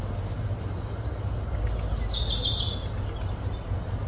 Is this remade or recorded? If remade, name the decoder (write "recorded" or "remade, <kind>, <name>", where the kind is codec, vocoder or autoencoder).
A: recorded